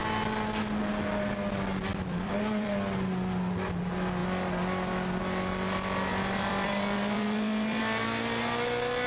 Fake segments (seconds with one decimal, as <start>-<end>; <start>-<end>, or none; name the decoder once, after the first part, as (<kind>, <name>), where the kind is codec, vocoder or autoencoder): 1.9-2.8 (vocoder, BigVGAN v2); 6.1-7.8